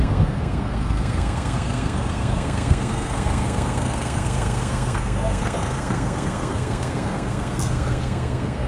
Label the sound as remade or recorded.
remade